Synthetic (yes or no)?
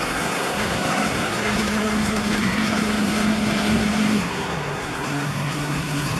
yes